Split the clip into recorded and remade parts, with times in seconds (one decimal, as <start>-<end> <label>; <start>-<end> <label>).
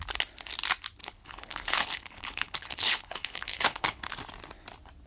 0.0-1.0 recorded; 1.0-4.1 remade; 4.1-5.1 recorded